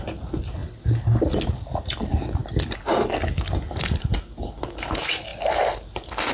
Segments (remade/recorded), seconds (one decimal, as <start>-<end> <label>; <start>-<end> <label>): 0.0-0.6 remade; 0.6-1.5 recorded; 1.5-2.4 remade; 2.4-4.6 recorded; 4.6-5.3 remade; 5.3-6.3 recorded